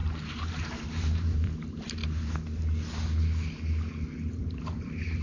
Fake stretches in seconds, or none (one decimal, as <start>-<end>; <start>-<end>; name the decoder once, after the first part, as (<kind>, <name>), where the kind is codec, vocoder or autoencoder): 0.0-2.0 (vocoder, BigVGAN v2); 4.4-5.2